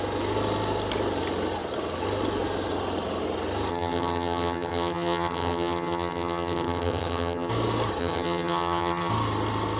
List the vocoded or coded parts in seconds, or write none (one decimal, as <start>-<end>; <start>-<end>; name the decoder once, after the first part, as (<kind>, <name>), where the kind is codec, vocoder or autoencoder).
3.7-7.5 (vocoder, HiFi-GAN); 8.0-9.1